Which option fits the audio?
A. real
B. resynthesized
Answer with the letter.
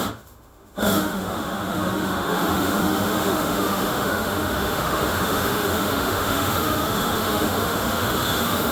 B